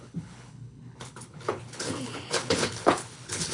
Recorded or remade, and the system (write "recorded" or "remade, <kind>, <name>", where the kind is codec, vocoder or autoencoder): remade, codec, HILCodec